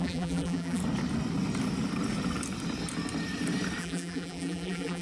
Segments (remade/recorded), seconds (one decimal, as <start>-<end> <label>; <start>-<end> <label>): 0.0-0.8 remade; 0.8-3.8 recorded; 3.8-5.0 remade